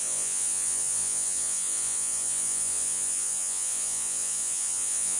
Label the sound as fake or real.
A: fake